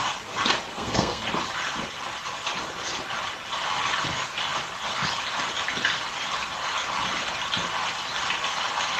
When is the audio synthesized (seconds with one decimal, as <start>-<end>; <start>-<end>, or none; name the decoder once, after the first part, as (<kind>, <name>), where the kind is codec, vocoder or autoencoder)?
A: 0.7-1.2 (codec, SNAC)